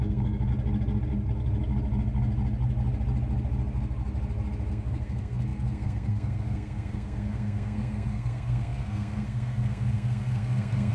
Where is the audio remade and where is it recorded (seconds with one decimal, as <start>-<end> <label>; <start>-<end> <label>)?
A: 0.0-0.5 remade; 0.5-4.7 recorded; 4.7-10.9 remade